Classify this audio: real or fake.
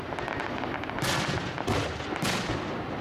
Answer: real